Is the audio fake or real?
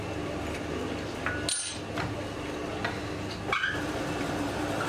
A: real